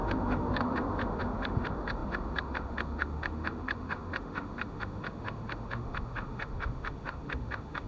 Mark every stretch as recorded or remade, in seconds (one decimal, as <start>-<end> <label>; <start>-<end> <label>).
0.0-7.9 remade